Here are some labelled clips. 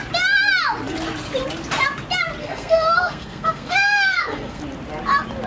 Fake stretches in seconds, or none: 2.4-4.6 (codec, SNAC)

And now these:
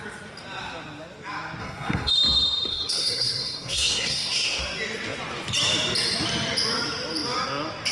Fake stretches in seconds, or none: 1.6-2.1 (codec, SNAC); 2.7-4.6

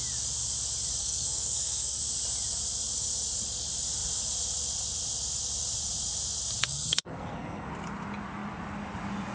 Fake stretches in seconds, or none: 1.0-2.0 (codec, SNAC); 6.6-7.7

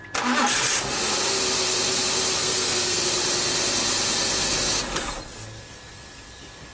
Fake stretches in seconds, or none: 2.4-3.0 (codec, SNAC)